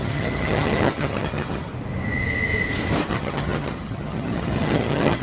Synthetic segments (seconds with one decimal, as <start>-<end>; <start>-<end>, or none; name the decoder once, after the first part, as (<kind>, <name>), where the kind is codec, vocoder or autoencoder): 0.0-1.7 (vocoder, HiFi-GAN); 3.1-5.2